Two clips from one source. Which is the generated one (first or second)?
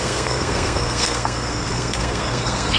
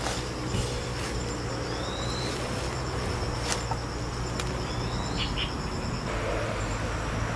first